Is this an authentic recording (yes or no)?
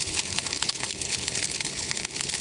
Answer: no